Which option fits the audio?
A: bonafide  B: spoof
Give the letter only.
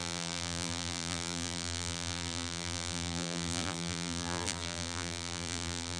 B